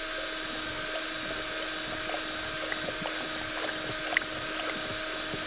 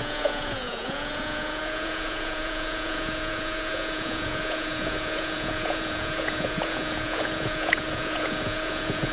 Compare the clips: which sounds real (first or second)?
first